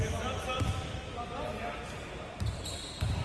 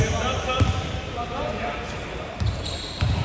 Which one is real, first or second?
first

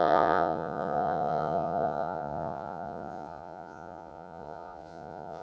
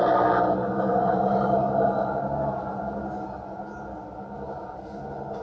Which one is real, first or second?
second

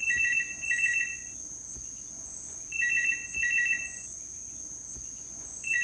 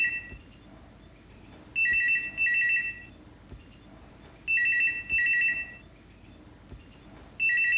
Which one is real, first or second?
second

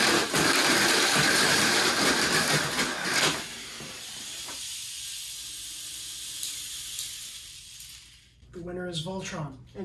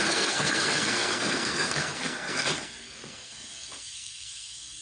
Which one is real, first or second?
first